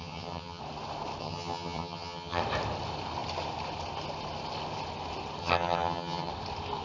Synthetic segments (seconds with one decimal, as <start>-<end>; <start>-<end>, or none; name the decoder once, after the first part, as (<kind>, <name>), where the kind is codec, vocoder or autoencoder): 0.0-0.6 (vocoder, HiFi-GAN); 1.2-2.4; 5.4-6.3